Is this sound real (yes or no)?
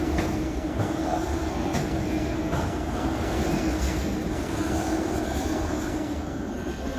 no